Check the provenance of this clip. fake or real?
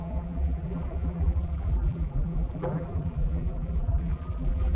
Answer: fake